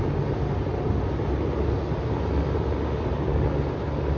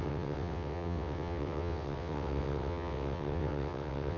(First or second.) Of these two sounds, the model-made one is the second